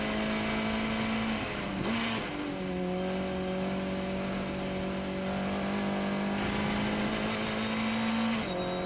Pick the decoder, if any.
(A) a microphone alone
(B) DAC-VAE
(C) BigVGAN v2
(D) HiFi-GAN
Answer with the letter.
A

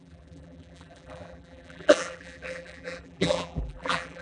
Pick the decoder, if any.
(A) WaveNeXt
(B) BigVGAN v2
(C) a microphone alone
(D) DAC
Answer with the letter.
B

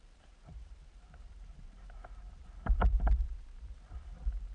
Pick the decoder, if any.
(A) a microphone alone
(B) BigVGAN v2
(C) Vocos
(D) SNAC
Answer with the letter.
B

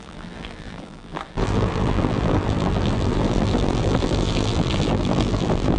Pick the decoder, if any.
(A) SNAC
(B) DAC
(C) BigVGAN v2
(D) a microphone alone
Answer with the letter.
C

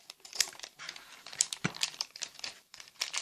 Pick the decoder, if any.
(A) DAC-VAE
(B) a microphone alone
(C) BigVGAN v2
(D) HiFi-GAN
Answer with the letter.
C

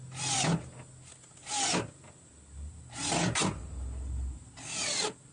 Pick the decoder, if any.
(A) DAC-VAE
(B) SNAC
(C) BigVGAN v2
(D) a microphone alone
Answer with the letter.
D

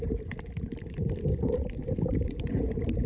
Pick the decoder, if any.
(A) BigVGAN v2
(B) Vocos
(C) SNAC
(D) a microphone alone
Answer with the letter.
A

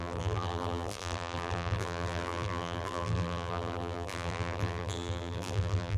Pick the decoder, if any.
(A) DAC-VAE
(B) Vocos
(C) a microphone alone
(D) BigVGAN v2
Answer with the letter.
D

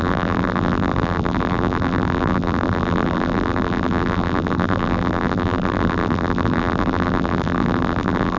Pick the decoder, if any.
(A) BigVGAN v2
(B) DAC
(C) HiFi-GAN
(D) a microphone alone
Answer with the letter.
A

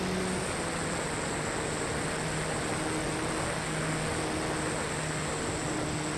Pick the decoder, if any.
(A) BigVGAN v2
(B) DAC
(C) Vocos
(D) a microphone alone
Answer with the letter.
D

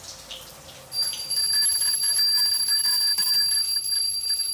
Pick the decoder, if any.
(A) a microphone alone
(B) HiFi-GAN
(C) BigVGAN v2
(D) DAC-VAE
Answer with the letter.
A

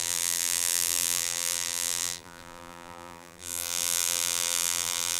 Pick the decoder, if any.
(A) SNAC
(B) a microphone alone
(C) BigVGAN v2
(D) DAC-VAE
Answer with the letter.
C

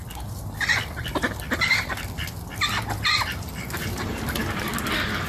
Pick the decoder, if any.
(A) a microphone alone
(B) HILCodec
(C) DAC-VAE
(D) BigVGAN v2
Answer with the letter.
A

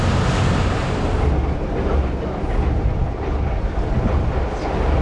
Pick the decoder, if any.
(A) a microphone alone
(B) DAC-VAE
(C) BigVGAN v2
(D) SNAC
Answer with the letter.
A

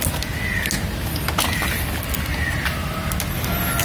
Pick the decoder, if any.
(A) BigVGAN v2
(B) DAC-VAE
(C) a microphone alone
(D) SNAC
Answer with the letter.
C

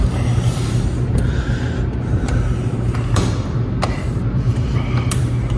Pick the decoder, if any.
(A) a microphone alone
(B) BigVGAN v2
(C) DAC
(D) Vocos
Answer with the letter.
B